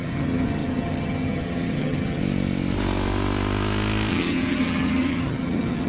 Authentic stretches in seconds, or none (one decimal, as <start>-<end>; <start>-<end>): 2.2-4.1